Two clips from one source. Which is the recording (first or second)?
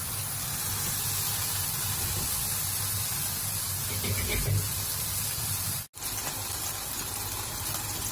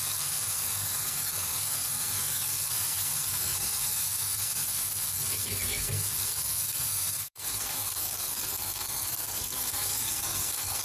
first